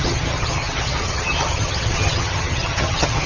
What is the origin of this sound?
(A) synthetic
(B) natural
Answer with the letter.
A